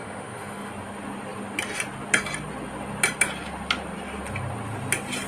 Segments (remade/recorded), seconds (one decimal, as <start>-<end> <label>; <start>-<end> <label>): 0.0-0.7 remade; 0.7-5.3 recorded